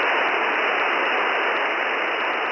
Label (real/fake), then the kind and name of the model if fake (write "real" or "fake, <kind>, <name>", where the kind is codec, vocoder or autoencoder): real